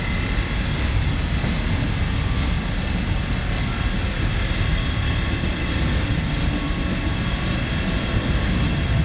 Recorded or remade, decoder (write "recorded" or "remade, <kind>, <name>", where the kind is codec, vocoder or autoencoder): recorded